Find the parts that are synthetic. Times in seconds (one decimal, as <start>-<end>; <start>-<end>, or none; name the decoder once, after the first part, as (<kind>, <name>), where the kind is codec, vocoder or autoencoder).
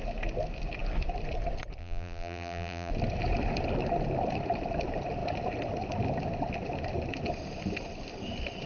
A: 1.8-2.9 (vocoder, BigVGAN v2)